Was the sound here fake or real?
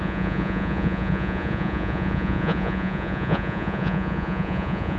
fake